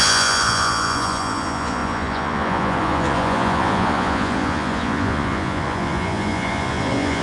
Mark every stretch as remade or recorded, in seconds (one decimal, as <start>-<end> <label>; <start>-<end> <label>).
0.0-7.2 remade